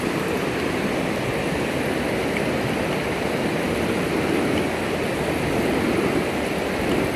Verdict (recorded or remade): recorded